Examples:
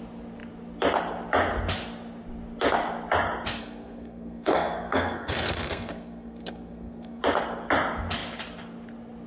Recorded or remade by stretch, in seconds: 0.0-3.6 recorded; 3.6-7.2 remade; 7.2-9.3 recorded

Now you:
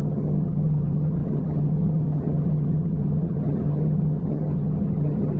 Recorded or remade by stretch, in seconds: 0.0-5.4 remade

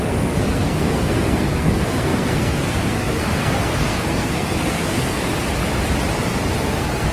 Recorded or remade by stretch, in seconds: 0.0-5.2 remade; 5.2-6.6 recorded; 6.6-7.1 remade

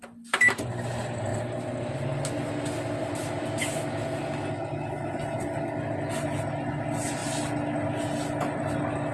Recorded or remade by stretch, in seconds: 0.0-9.1 recorded

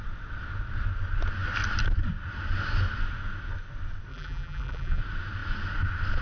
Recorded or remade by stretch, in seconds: 0.0-4.1 recorded; 4.1-5.0 remade; 5.0-6.2 recorded

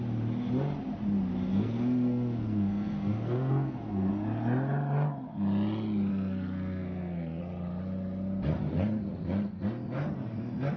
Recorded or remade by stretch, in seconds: 0.0-1.5 recorded; 1.5-4.1 remade; 4.1-6.1 recorded; 6.1-7.4 remade; 7.4-10.8 recorded

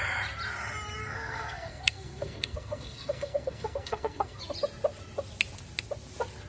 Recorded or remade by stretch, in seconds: 0.0-1.0 recorded; 1.0-4.4 remade; 4.4-6.5 recorded